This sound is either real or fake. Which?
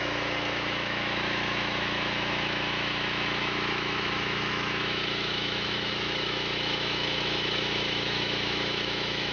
fake